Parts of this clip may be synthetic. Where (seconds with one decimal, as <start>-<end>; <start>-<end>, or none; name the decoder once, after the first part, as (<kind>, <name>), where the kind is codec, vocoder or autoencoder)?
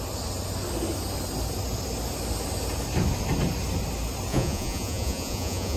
4.3-5.8 (vocoder, Vocos)